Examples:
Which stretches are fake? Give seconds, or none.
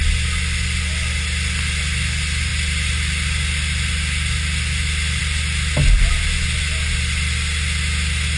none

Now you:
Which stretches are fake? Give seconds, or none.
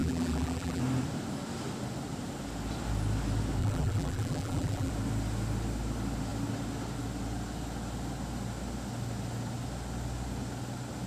0.0-0.8 (vocoder, BigVGAN v2); 3.6-4.9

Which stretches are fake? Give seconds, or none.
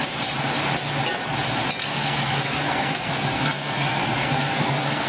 1.8-5.1 (codec, SNAC)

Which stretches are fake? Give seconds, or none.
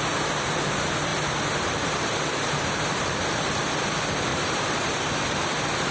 1.1-3.8 (vocoder, BigVGAN v2); 4.3-5.5